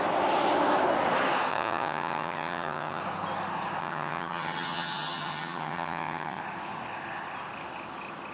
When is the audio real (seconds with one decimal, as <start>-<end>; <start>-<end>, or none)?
0.0-1.5; 3.0-3.8; 6.4-8.3